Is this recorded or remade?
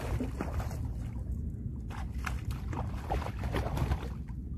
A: recorded